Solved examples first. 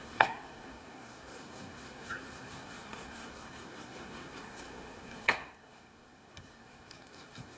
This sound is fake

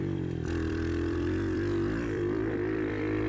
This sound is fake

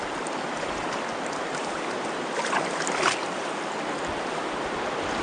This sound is real